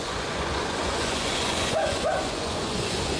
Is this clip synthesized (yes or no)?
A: yes